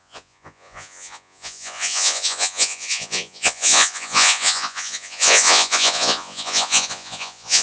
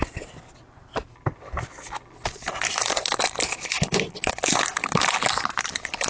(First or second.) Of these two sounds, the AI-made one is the first